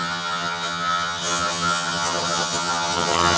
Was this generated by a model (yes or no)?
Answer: yes